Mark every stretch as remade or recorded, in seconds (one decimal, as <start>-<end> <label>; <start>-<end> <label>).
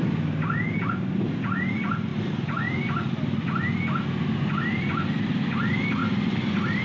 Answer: 0.0-6.8 recorded